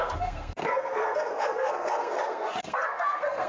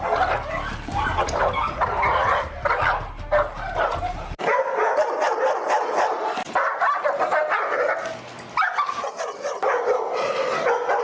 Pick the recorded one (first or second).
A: second